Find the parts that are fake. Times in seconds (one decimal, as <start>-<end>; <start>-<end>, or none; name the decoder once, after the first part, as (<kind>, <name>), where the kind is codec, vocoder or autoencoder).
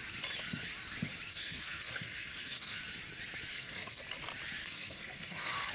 1.3-2.8 (codec, SNAC); 3.5-4.0; 4.6-5.7